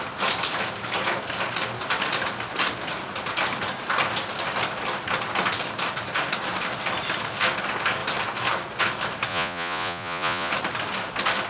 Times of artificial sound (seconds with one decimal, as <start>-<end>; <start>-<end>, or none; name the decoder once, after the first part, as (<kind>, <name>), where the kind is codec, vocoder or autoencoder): 9.3-10.5 (vocoder, Vocos)